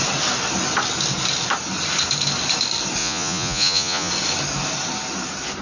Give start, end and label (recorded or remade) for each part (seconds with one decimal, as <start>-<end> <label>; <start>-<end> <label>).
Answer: 0.0-3.0 recorded; 3.0-4.1 remade; 4.1-5.6 recorded